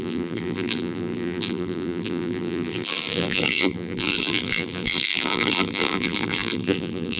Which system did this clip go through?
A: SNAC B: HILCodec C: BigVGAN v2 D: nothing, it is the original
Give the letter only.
C